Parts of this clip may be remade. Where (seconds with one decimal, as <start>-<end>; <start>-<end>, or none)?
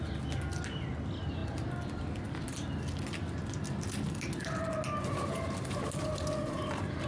none